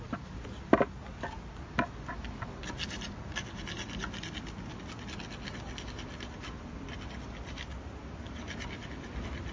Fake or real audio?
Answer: real